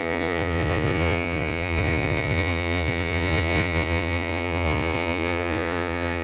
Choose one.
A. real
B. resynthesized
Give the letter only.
B